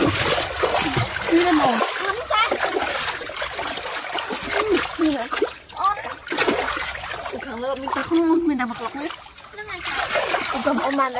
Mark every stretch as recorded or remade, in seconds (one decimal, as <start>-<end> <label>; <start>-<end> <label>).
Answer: 0.0-11.2 recorded